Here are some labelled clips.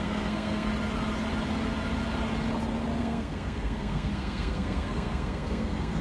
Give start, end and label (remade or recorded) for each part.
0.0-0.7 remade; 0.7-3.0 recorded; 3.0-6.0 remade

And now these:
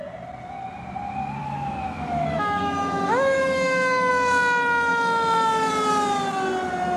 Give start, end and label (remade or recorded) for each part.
0.0-1.4 recorded; 1.4-4.1 remade; 4.1-7.0 recorded

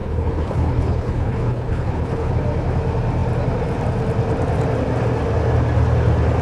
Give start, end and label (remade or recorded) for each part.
0.0-2.3 remade; 2.3-6.4 recorded

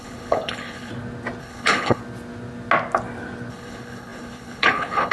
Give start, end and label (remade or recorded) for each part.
0.0-0.9 remade; 0.9-1.4 recorded; 1.4-2.0 remade; 2.0-3.5 recorded; 3.5-5.1 remade

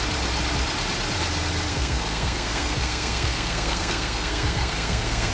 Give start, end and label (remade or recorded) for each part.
0.0-1.7 recorded; 1.7-5.3 remade

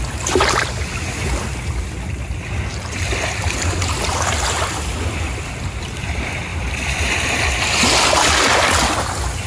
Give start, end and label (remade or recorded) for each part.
0.0-2.7 recorded; 2.7-5.8 remade; 5.8-6.5 recorded; 6.5-7.5 remade; 7.5-9.5 recorded

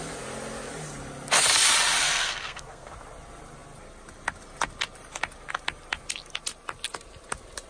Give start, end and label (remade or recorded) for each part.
0.0-2.0 recorded; 2.0-2.9 remade; 2.9-7.7 recorded

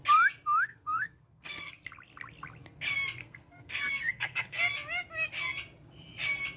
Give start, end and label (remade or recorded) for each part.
0.0-0.7 recorded; 0.7-1.7 remade; 1.7-3.2 recorded; 3.2-4.6 remade; 4.6-6.6 recorded